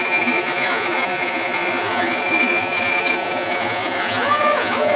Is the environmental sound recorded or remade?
remade